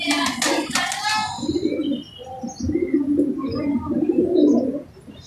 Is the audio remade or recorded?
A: recorded